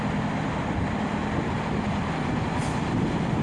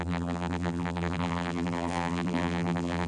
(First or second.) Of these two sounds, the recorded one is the first